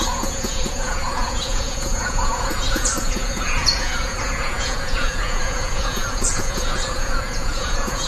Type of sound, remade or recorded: remade